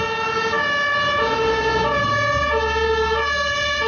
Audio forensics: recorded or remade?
recorded